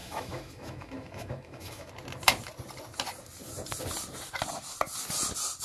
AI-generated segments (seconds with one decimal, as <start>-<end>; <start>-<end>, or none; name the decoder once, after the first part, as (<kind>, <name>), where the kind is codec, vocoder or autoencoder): 0.0-1.9 (autoencoder, DAC-VAE)